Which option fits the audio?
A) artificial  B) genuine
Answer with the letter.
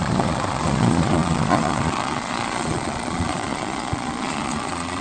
A